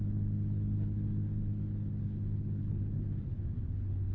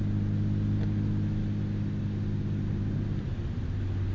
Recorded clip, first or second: second